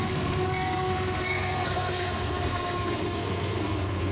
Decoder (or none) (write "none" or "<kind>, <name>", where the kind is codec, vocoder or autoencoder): codec, SNAC